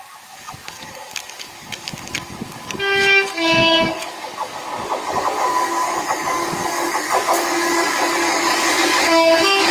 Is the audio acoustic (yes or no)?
no